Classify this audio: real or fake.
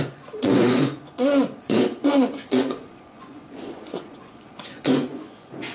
fake